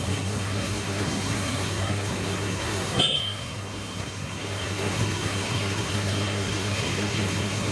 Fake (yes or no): yes